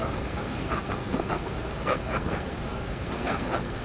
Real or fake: fake